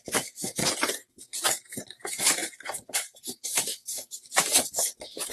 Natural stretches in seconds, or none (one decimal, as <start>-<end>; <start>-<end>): 0.6-1.1